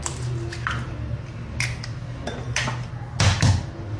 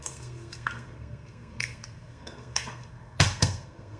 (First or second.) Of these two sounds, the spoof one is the second